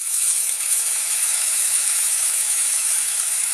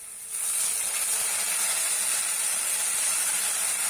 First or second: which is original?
second